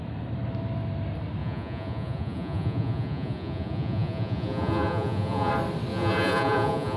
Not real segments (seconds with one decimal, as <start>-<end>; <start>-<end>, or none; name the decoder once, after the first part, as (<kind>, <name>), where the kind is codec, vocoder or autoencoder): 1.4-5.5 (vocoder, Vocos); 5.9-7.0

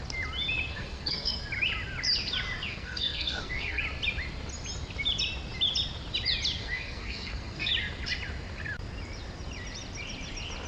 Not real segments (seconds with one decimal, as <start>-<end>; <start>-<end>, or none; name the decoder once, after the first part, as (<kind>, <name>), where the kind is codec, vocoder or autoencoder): 0.7-1.4 (codec, SNAC); 2.7-3.8; 6.6-7.7

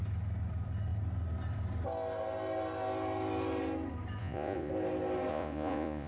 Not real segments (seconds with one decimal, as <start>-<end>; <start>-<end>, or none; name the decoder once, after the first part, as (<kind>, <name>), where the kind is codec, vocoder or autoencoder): 4.2-4.7 (vocoder, Vocos); 5.3-6.1

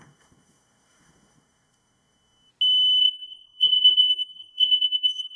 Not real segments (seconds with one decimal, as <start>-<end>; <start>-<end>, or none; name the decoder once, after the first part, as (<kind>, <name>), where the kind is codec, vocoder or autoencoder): 0.0-2.5 (codec, SNAC); 3.0-5.4

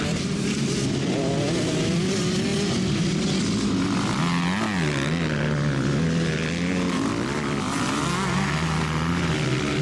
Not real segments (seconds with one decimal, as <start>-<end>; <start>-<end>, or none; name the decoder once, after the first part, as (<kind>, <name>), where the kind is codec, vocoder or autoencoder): none

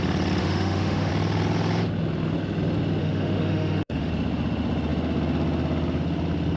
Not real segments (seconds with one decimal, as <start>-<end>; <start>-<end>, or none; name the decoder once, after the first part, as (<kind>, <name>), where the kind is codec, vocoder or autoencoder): 0.4-1.1 (autoencoder, DAC-VAE); 3.0-4.1

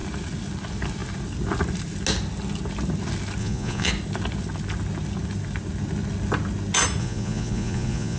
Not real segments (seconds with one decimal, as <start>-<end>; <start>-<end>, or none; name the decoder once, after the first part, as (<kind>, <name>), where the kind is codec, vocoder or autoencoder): 3.4-3.9 (vocoder, Vocos); 7.0-8.2

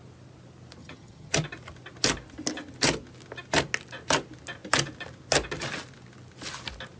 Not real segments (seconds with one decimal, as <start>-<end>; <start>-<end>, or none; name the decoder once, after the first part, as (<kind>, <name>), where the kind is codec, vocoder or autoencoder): 0.8-1.3 (vocoder, HiFi-GAN)